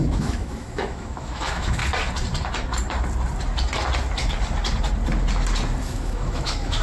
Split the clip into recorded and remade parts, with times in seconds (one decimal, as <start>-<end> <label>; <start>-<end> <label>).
0.0-1.8 remade; 1.8-5.8 recorded; 5.8-6.8 remade